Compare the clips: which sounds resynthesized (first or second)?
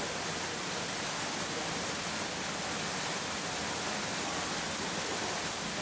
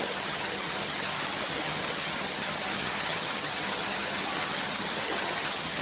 second